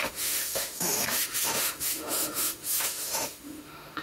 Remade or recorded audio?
remade